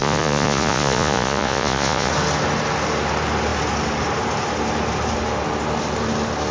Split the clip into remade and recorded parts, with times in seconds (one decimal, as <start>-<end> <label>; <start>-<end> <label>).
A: 0.0-2.1 remade; 2.1-6.5 recorded